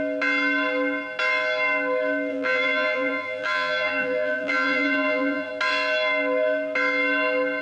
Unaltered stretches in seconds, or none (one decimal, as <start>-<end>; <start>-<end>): 0.0-2.3; 5.5-7.6